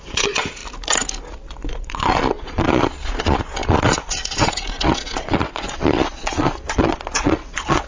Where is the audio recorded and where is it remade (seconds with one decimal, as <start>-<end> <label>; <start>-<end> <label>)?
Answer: 0.0-0.6 remade; 0.6-1.7 recorded; 1.7-7.9 remade